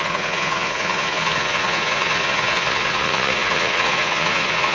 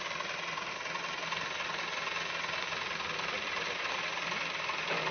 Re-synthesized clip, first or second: first